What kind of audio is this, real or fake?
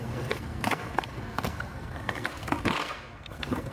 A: fake